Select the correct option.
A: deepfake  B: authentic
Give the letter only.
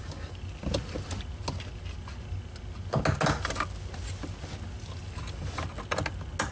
B